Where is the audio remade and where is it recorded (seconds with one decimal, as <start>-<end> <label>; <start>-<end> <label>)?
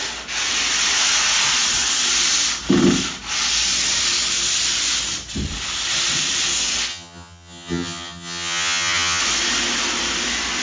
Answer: 0.0-6.9 recorded; 6.9-9.2 remade; 9.2-10.6 recorded